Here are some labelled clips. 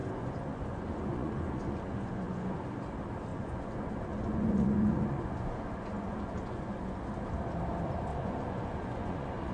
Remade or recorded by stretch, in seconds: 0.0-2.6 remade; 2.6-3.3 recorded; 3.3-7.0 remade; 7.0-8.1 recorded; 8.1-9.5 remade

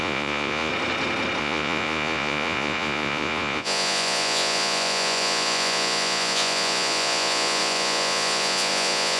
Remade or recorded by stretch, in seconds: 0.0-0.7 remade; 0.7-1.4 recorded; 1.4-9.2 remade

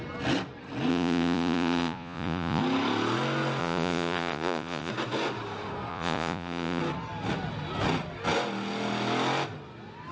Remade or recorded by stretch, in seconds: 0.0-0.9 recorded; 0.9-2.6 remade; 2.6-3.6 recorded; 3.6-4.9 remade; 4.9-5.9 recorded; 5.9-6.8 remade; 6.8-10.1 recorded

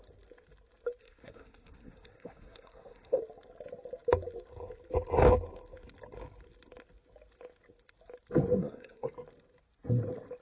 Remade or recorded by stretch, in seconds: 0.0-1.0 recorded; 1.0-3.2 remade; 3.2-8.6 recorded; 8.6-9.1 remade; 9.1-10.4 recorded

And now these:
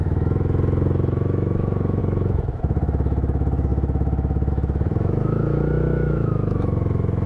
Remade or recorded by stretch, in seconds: 0.0-7.3 remade